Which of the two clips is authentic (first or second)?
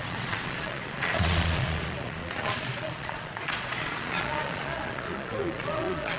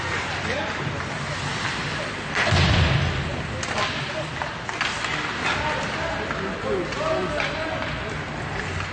second